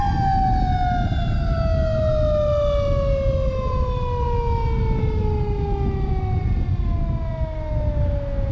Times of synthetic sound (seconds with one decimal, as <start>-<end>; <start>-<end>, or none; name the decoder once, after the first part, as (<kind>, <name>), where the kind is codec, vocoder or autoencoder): none